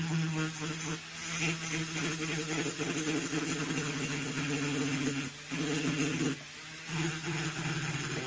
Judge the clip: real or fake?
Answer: real